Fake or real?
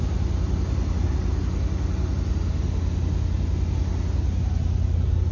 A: real